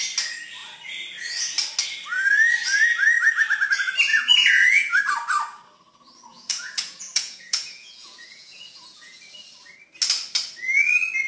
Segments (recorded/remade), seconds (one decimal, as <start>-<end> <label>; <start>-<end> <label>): 0.0-4.1 recorded; 4.1-5.0 remade; 5.0-6.3 recorded; 6.3-9.2 remade; 9.2-11.3 recorded